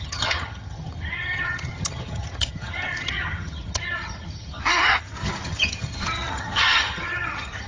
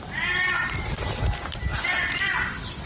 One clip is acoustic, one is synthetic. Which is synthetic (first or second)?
first